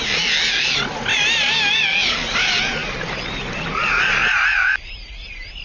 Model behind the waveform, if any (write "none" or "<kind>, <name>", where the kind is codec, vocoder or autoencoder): none